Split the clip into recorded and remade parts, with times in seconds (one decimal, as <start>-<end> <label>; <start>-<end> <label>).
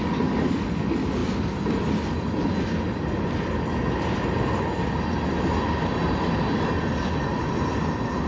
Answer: 0.0-8.3 recorded